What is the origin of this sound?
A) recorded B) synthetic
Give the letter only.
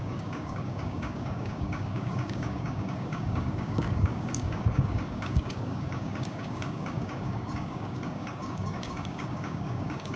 B